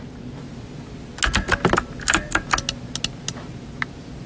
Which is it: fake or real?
real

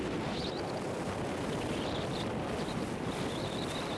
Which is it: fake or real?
real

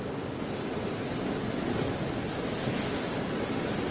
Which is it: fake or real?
real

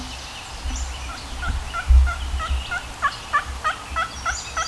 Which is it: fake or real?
real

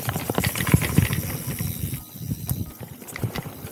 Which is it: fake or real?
real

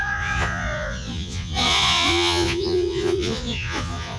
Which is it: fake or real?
fake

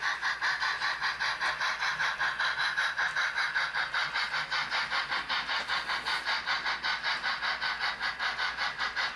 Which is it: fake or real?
real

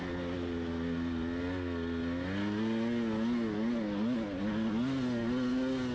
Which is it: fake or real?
real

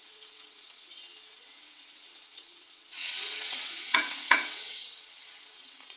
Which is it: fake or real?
fake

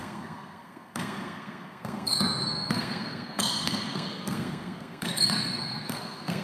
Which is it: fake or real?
fake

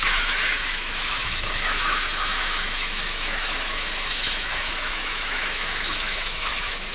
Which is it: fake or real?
fake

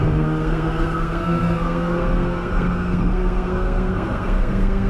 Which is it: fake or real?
fake